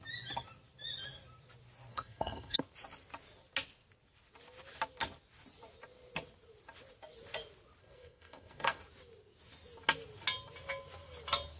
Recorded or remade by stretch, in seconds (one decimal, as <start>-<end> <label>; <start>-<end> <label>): 0.0-1.9 recorded; 1.9-2.6 remade; 2.6-7.8 recorded; 7.8-8.8 remade; 8.8-11.6 recorded